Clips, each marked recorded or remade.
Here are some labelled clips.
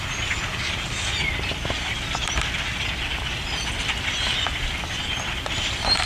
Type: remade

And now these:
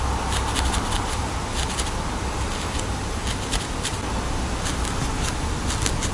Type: recorded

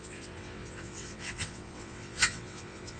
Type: remade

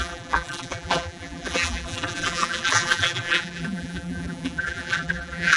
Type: remade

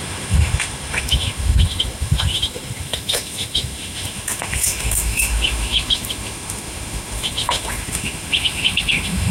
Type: remade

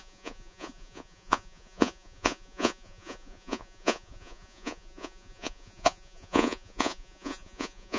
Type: remade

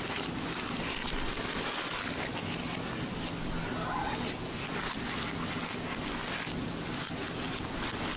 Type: recorded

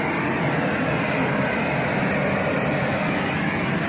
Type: recorded